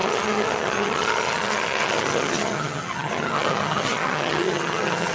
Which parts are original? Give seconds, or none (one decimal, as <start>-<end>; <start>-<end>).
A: none